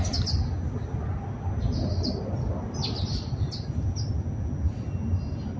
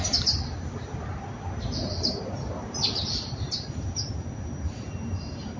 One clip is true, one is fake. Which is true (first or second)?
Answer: first